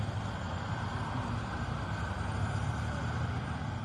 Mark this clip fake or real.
real